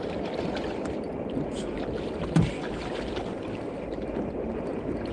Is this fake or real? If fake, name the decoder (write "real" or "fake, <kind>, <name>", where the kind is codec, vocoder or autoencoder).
real